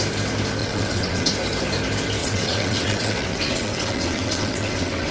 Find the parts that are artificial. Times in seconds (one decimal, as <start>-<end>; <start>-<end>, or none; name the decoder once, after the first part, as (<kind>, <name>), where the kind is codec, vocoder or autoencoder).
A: 0.6-1.3 (vocoder, WaveNeXt); 2.2-5.1